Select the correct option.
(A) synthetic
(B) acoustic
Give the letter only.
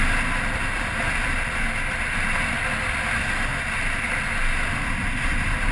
B